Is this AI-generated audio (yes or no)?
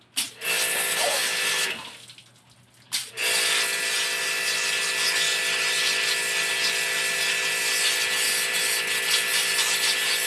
no